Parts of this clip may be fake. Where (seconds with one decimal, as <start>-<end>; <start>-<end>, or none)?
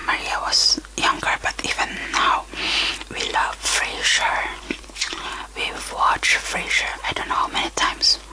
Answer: 4.5-5.3; 6.9-7.9